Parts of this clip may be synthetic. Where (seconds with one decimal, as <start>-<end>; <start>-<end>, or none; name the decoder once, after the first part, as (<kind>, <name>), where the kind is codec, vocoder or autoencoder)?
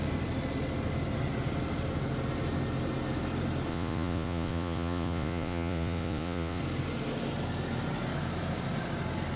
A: 3.7-6.6 (vocoder, Vocos)